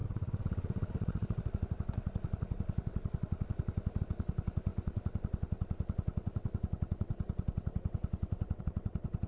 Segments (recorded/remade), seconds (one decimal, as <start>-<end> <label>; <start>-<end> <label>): 0.0-9.3 remade